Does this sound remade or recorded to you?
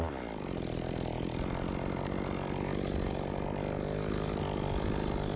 recorded